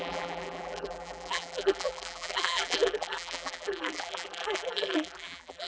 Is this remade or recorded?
remade